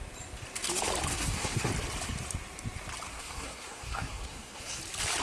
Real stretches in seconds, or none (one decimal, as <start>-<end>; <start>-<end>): 0.0-1.1; 1.7-3.1; 4.8-5.2